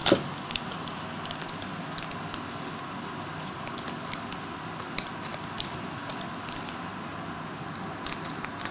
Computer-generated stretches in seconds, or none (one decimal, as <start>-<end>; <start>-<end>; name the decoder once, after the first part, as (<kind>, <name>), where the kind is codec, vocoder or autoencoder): none